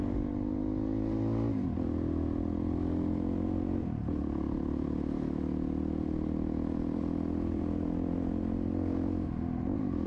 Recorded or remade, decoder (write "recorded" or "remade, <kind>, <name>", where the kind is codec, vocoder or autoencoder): recorded